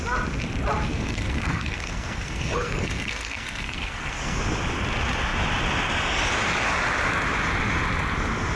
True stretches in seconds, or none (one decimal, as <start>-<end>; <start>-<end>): 0.0-0.9; 4.4-8.6